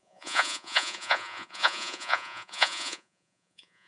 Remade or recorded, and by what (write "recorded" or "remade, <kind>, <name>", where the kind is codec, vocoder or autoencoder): remade, vocoder, Vocos